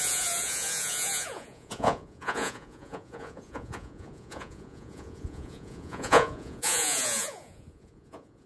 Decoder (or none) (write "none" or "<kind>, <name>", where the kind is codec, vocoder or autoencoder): vocoder, Vocos